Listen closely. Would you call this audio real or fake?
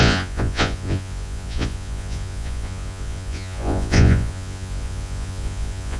fake